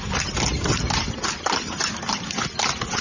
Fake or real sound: real